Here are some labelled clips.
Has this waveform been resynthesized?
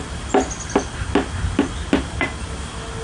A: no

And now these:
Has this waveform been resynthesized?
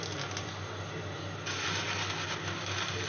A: no